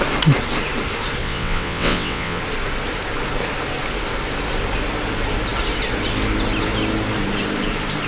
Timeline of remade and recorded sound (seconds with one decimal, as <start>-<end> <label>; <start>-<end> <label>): 0.0-1.2 recorded; 1.2-2.4 remade; 2.4-8.1 recorded